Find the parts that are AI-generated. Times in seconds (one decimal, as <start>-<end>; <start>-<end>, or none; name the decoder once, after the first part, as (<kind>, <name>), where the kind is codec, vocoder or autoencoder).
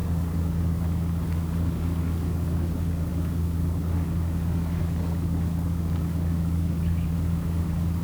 0.0-8.0 (codec, DAC)